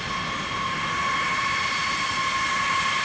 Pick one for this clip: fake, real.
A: real